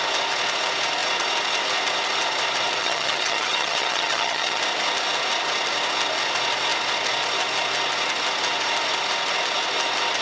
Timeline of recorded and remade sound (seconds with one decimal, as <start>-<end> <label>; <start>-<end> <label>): 0.0-2.8 recorded; 2.8-4.6 remade; 4.6-10.2 recorded